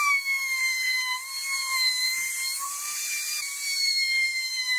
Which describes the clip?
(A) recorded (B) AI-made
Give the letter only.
B